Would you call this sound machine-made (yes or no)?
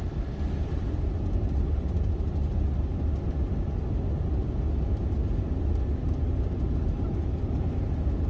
no